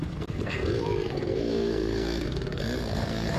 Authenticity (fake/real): fake